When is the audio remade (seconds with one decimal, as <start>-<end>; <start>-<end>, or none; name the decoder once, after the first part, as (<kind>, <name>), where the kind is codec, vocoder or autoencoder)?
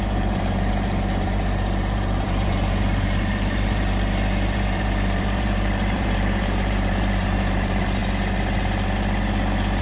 0.0-8.0 (vocoder, BigVGAN v2)